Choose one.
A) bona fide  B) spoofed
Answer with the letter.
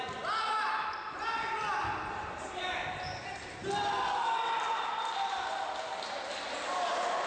A